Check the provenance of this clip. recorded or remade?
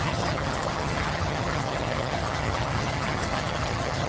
remade